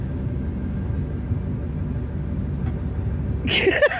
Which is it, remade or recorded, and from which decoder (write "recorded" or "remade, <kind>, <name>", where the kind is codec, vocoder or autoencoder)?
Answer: recorded